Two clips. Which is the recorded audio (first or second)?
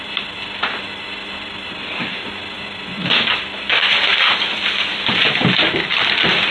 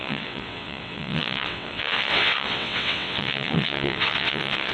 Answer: first